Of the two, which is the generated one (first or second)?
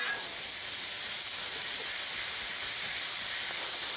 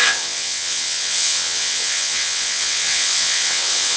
second